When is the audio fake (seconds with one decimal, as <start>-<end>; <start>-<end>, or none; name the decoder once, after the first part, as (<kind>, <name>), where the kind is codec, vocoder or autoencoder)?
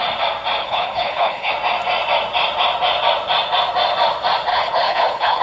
0.6-1.5 (codec, HILCodec); 4.5-5.4